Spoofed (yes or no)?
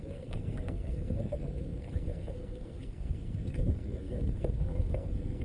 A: yes